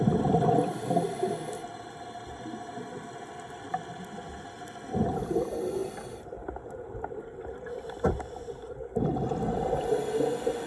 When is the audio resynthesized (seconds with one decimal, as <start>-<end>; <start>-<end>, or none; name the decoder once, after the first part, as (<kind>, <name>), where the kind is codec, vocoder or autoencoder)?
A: none